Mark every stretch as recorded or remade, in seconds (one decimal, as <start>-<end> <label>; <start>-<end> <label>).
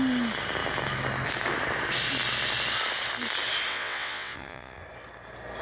0.0-3.7 recorded; 3.7-4.8 remade; 4.8-5.6 recorded